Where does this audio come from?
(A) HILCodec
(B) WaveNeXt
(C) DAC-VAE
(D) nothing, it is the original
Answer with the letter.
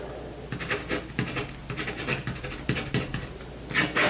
D